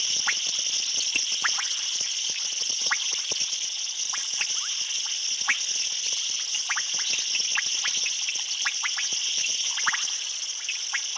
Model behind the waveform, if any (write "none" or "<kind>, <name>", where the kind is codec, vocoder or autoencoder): none